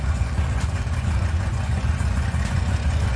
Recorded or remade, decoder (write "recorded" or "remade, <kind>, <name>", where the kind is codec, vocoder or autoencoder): remade, vocoder, Vocos